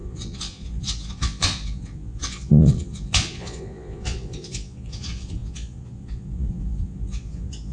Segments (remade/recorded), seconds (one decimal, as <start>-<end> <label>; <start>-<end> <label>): 0.0-7.7 remade